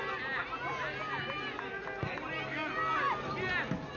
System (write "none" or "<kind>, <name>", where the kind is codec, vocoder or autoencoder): none